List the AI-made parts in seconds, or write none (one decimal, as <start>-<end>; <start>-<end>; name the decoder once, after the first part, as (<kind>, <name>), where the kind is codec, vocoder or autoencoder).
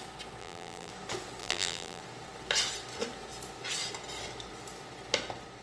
0.4-0.9 (vocoder, BigVGAN v2); 1.4-2.0